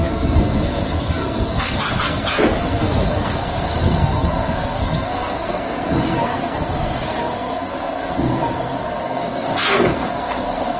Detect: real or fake fake